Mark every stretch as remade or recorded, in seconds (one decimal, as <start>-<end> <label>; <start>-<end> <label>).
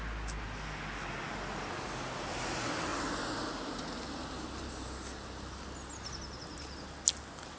0.0-7.6 recorded